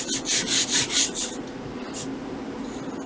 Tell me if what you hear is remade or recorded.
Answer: recorded